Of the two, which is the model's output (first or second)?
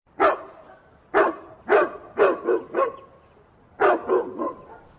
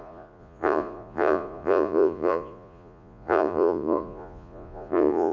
second